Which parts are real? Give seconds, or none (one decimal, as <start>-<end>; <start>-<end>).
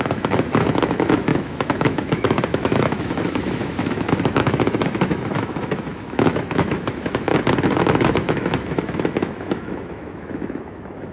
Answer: 7.3-7.8